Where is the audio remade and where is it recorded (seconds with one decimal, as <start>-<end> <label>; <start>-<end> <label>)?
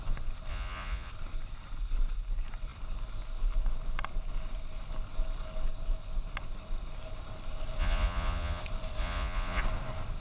0.0-0.5 recorded; 0.5-1.1 remade; 1.1-7.8 recorded; 7.8-8.6 remade; 8.6-9.0 recorded; 9.0-9.6 remade; 9.6-10.2 recorded